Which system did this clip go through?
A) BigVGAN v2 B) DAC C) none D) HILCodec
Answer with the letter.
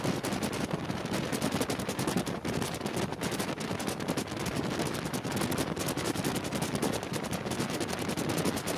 C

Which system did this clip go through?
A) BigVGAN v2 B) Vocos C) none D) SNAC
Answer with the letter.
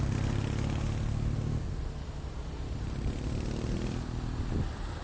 C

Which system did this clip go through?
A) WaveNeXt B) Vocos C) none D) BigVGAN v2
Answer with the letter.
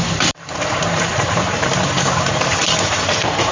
D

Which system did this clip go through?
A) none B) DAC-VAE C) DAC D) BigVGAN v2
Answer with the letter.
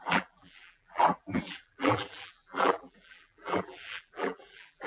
D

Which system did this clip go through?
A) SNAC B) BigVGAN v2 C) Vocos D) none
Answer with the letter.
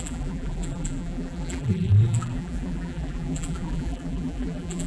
B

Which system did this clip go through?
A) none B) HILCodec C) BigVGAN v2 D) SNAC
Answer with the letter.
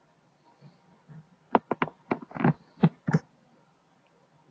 A